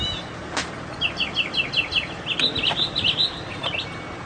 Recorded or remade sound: recorded